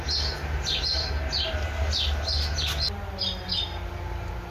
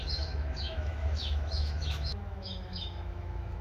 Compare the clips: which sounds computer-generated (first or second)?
second